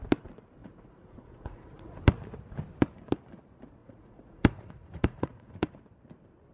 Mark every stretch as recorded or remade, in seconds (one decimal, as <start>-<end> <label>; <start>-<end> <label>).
0.0-0.6 recorded; 0.6-2.0 remade; 2.0-3.8 recorded; 3.8-5.8 remade; 5.8-6.5 recorded